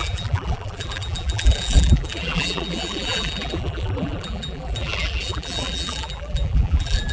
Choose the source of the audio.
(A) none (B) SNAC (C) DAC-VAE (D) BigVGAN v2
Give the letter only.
D